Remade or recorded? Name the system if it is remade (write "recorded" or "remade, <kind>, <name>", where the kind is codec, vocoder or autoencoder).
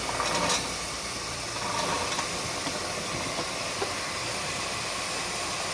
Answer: recorded